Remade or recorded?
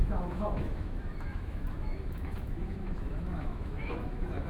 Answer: remade